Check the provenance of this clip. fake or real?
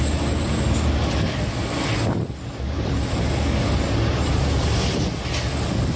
real